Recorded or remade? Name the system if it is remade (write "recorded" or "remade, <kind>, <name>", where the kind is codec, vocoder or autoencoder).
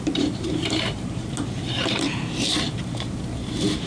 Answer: remade, vocoder, BigVGAN v2